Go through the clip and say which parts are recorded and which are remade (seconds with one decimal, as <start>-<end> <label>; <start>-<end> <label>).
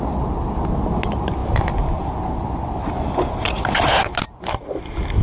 0.0-5.2 recorded